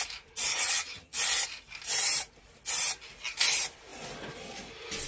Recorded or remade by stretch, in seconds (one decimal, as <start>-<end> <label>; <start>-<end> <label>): 0.0-0.5 recorded; 0.5-1.2 remade; 1.2-5.1 recorded